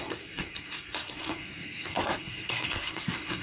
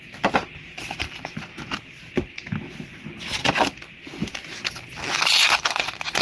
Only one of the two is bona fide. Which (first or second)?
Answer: second